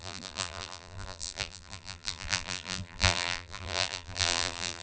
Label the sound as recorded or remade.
remade